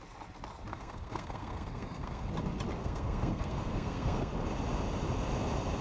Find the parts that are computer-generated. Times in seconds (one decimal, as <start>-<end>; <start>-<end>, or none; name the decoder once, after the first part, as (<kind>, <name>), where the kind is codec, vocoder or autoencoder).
0.7-2.3 (codec, SNAC); 2.8-4.3